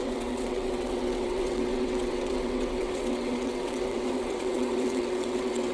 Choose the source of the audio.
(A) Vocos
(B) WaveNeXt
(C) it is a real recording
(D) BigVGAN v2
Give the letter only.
B